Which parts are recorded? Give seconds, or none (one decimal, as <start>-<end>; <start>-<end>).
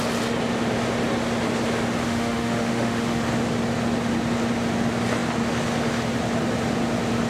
0.0-2.0; 3.2-7.3